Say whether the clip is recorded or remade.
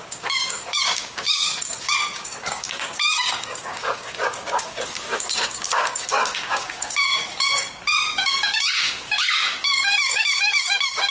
remade